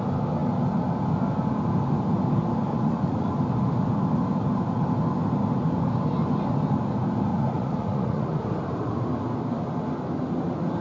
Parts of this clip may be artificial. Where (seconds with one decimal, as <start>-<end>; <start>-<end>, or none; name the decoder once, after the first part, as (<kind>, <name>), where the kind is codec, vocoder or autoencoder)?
2.7-3.3 (vocoder, Vocos); 7.3-8.4